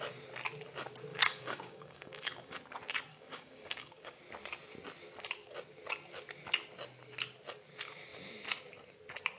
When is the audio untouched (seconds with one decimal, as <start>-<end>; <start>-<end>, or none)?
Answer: 0.0-1.1; 2.6-3.1; 4.2-9.4